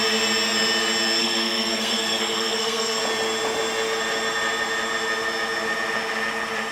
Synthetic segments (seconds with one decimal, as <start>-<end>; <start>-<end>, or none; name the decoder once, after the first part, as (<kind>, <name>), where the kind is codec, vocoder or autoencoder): 1.2-3.0 (codec, SNAC)